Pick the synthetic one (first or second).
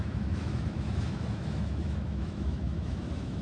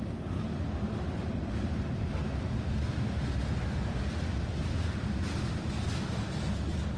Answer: first